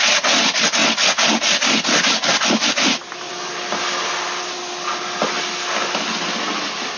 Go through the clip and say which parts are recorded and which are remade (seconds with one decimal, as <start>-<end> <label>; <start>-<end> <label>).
0.0-7.0 recorded